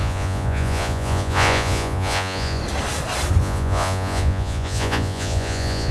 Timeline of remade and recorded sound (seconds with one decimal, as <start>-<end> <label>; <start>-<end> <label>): 0.0-2.6 remade; 2.6-3.4 recorded; 3.4-5.9 remade